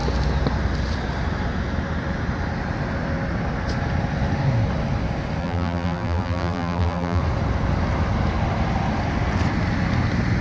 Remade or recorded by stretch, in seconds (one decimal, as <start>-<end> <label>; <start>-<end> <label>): 0.0-5.4 recorded; 5.4-7.2 remade; 7.2-10.4 recorded